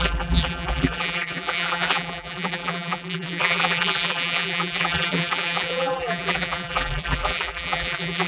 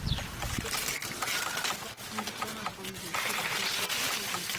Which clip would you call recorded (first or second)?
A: second